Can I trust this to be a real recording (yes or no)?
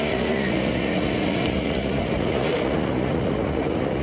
no